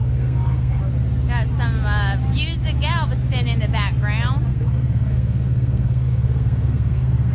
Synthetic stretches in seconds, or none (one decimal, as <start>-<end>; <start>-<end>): 0.0-0.8; 4.5-7.3